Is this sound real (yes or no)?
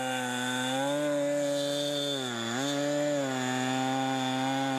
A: yes